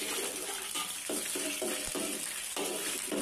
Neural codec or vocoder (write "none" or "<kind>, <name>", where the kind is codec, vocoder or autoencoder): none